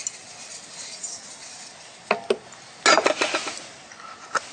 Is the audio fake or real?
real